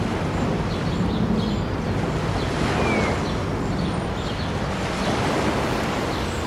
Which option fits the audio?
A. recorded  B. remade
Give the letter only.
A